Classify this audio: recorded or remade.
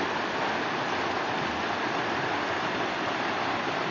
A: recorded